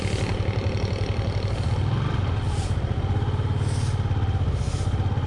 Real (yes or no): yes